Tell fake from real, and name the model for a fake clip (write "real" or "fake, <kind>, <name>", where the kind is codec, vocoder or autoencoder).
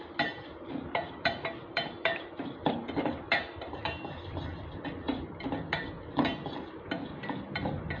fake, vocoder, BigVGAN v2